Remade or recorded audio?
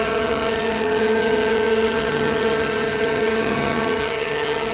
remade